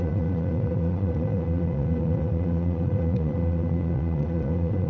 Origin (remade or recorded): remade